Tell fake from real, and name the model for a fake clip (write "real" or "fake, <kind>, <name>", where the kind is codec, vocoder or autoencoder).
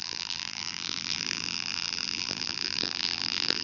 fake, vocoder, BigVGAN v2